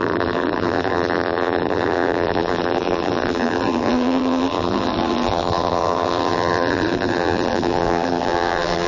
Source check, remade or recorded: remade